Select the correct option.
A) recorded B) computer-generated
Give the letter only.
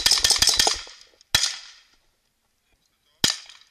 A